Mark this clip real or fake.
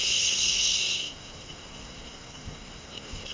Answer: fake